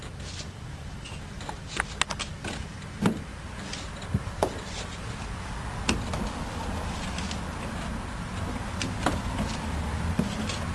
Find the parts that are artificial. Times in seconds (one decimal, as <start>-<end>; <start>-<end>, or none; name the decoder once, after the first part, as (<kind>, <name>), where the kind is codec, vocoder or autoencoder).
0.0-0.6 (vocoder, BigVGAN v2); 3.3-5.1